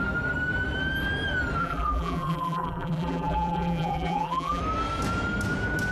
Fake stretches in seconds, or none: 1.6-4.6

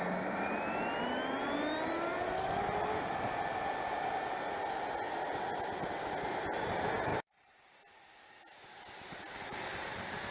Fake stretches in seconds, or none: 7.1-8.2

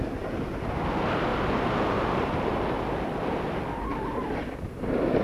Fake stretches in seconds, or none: none

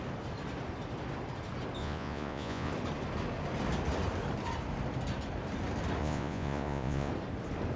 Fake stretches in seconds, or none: 1.8-2.7; 6.0-7.1

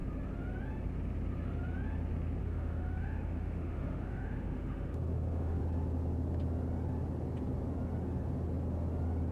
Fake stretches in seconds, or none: 2.4-5.6

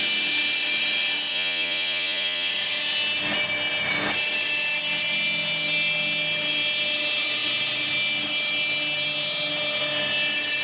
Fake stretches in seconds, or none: 1.3-2.5